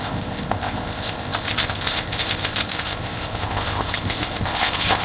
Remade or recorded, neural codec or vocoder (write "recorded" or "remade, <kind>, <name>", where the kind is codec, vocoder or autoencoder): remade, codec, ZipCodec